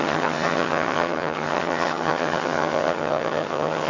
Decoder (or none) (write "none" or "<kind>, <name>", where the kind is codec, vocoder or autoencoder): vocoder, HiFi-GAN